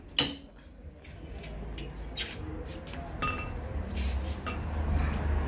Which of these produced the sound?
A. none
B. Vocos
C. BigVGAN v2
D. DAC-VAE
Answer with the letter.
A